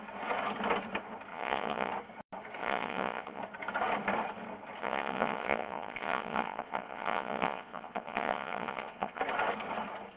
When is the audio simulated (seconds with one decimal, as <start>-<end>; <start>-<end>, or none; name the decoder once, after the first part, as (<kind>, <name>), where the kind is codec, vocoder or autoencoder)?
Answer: 1.3-1.9 (vocoder, Vocos); 2.6-3.4; 4.8-9.2